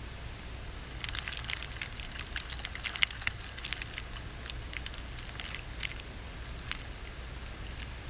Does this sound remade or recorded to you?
recorded